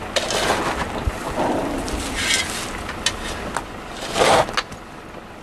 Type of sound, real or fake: real